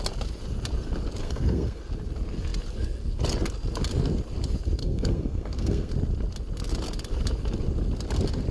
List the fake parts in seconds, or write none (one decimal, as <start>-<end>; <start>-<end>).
1.2-1.8; 4.8-5.9